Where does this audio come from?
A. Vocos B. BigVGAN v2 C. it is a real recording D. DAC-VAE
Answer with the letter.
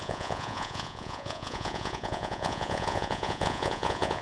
A